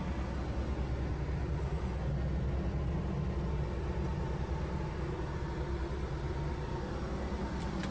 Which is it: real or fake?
real